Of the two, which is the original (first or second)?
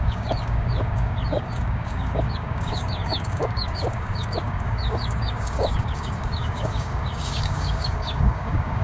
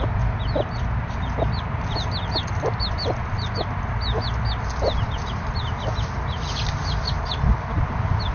second